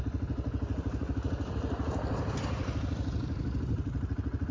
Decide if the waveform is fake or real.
real